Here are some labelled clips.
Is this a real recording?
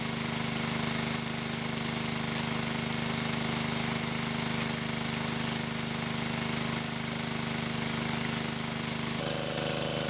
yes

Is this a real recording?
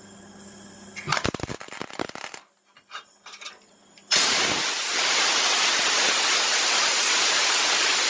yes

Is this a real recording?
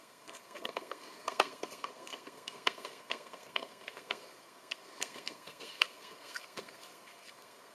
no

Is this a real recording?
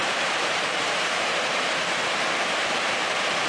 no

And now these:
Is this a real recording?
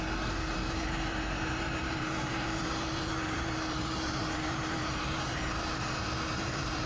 no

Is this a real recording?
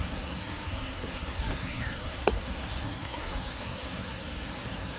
no